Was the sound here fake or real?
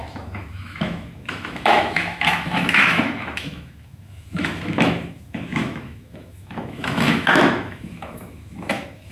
fake